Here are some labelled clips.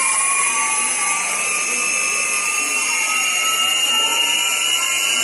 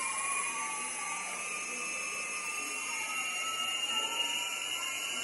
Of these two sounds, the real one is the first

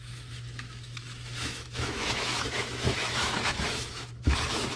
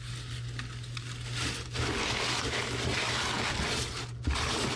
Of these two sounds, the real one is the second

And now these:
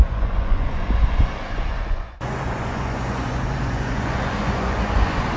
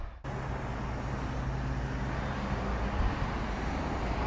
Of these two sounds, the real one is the second